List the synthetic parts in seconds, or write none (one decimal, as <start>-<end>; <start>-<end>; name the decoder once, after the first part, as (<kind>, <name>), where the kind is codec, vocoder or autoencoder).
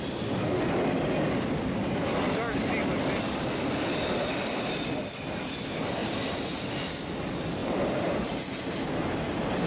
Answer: 6.0-6.6 (vocoder, BigVGAN v2); 7.6-9.0